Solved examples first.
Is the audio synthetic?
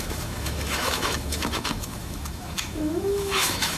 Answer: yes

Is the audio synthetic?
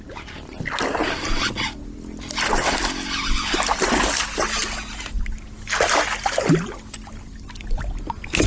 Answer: no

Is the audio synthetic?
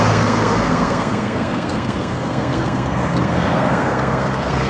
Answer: yes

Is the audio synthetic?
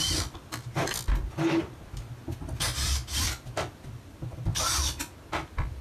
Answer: no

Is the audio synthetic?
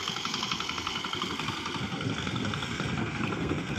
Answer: yes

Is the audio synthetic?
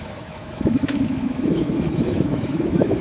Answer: yes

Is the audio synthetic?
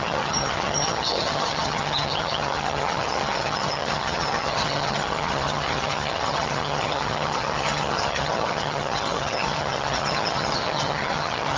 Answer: yes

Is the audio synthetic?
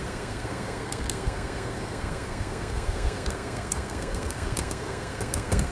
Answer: yes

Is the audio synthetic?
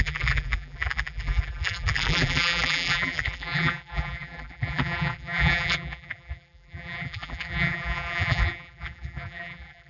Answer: yes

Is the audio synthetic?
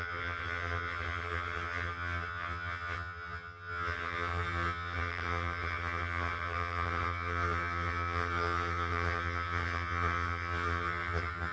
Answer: yes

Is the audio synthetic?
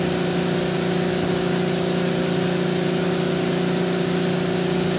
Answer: no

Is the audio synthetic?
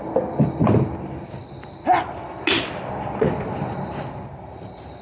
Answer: no